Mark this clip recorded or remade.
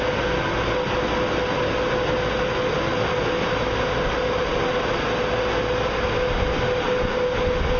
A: recorded